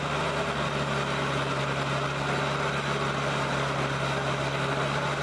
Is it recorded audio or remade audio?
recorded